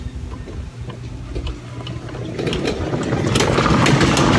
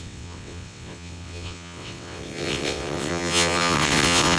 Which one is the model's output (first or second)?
second